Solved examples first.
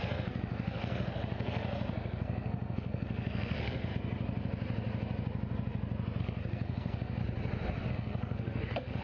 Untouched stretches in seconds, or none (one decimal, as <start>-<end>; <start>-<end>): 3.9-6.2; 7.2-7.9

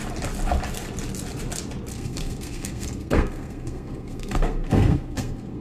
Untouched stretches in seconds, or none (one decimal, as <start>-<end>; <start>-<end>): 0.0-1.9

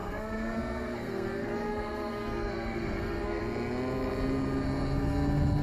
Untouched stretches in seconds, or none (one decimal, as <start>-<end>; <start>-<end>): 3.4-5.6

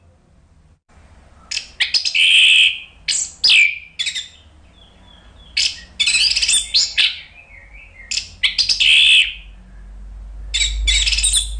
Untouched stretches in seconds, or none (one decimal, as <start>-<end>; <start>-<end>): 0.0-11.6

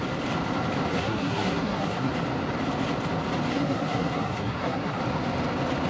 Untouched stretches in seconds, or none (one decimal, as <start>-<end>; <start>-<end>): 0.0-0.9; 2.1-3.5; 5.0-5.9

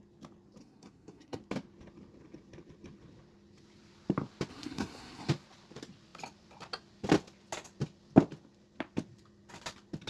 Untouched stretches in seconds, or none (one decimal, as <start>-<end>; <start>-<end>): 0.0-0.6; 1.4-4.5; 5.3-10.1

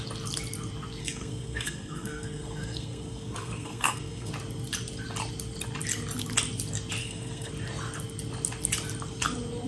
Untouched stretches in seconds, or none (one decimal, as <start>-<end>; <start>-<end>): 0.0-1.0; 4.3-7.0; 7.5-9.7

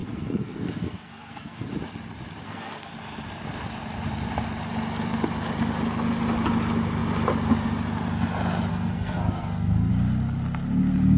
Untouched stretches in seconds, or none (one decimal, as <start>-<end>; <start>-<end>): 1.7-2.4; 2.9-8.7; 9.9-11.2